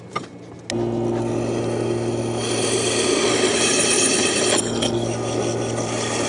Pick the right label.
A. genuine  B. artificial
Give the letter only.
A